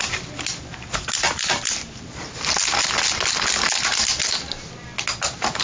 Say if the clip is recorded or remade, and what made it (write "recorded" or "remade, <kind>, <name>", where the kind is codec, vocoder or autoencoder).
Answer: recorded